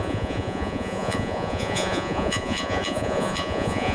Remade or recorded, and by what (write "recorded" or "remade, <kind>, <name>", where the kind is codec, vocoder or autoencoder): remade, vocoder, Vocos